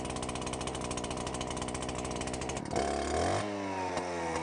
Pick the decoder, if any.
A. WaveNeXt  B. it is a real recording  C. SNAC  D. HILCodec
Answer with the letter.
B